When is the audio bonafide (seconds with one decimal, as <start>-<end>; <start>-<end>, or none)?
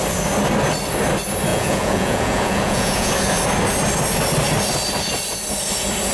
0.0-1.5; 3.1-6.1